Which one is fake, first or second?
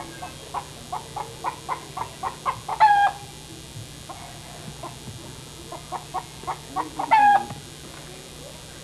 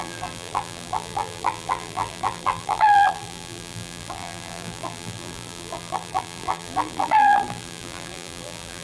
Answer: second